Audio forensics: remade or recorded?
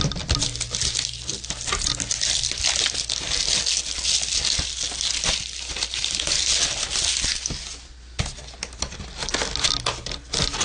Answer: recorded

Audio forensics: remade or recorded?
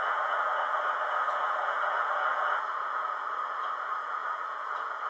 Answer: remade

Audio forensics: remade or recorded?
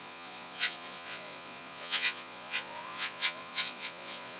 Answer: remade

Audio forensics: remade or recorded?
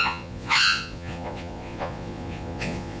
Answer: remade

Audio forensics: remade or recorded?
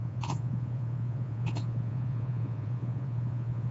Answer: remade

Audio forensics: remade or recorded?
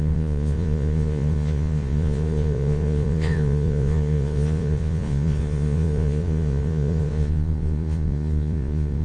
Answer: remade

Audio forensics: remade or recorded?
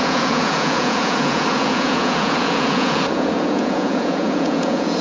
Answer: remade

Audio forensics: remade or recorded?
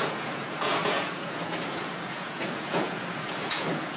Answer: remade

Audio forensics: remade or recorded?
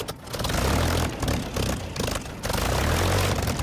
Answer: recorded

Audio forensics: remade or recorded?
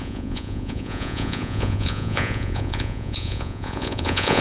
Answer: remade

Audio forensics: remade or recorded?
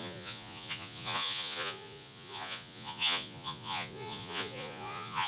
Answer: remade